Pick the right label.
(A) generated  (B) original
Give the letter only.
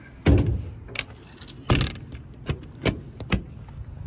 B